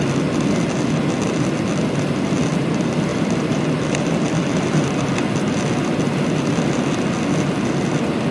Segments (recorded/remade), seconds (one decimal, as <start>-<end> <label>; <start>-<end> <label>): 0.0-3.1 recorded; 3.1-5.1 remade; 5.1-8.3 recorded